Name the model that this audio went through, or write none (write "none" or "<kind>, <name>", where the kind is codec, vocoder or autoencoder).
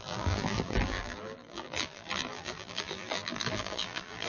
vocoder, BigVGAN v2